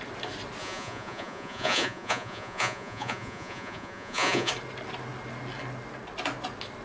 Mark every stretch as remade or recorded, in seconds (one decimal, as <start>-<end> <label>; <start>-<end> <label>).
0.0-0.6 recorded; 0.6-4.5 remade; 4.5-6.8 recorded